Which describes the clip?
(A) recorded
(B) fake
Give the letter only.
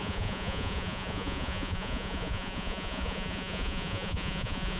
B